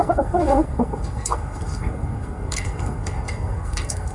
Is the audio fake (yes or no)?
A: yes